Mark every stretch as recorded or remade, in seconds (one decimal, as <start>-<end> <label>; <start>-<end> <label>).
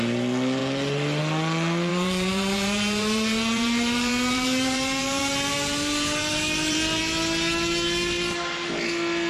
0.0-1.9 recorded; 1.9-7.0 remade; 7.0-9.3 recorded